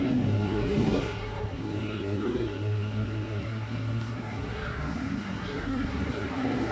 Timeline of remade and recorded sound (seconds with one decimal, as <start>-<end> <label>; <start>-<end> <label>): 0.0-6.7 remade